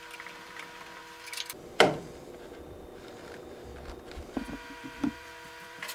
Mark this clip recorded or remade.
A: remade